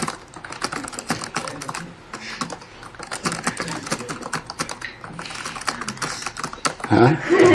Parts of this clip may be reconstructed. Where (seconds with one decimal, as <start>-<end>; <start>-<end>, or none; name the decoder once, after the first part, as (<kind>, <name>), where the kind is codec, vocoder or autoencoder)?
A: none